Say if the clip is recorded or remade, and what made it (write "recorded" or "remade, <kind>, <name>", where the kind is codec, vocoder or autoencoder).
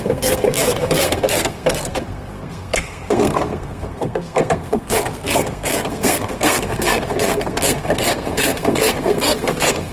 remade, codec, SNAC